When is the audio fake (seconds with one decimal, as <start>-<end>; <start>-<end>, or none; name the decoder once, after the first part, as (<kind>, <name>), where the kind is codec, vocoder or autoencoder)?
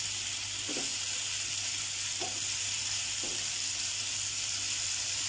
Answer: none